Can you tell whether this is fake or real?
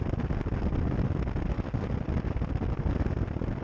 real